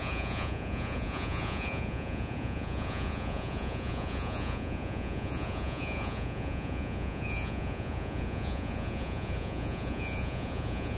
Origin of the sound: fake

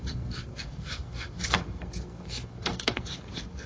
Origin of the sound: fake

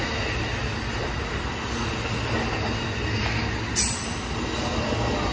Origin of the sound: real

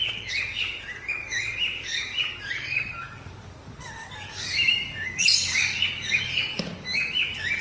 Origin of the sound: fake